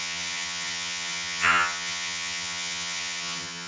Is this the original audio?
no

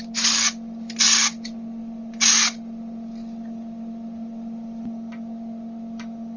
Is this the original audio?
yes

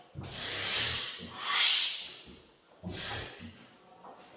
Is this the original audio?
yes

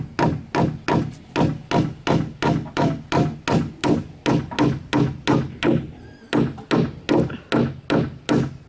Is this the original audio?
yes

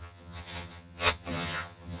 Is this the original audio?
no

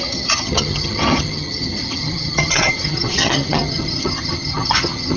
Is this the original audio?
no